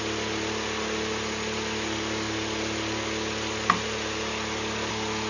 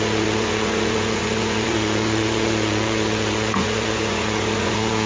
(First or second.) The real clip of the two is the first